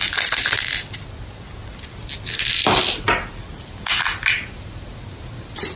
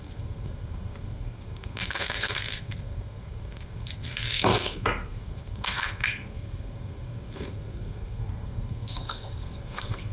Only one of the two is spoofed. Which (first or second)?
second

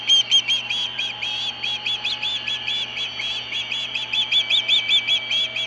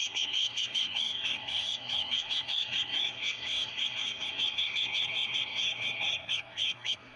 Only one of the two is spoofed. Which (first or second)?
second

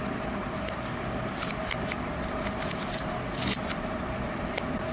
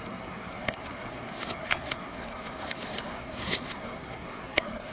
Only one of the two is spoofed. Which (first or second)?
second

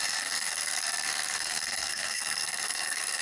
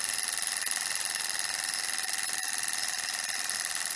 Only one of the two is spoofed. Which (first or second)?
first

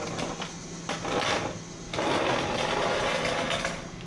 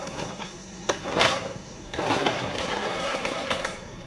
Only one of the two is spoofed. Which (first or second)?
second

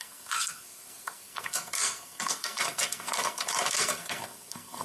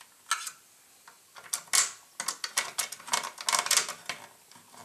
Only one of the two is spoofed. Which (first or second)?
first